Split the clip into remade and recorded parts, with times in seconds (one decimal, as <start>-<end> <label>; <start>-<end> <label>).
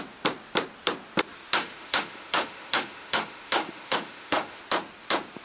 0.0-1.6 recorded; 1.6-4.6 remade; 4.6-5.4 recorded